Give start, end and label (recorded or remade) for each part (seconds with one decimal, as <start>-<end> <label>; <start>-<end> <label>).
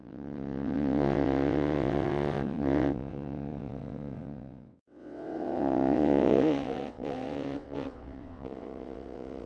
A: 0.0-9.5 remade